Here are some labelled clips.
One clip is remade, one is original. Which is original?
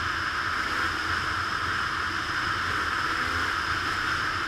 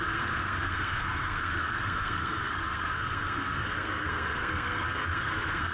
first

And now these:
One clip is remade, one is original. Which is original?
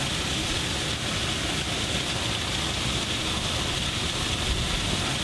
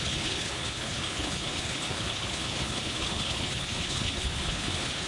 first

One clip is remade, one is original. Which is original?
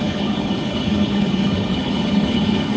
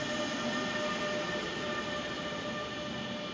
second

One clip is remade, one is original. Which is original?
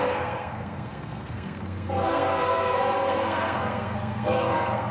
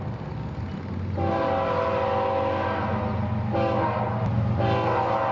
second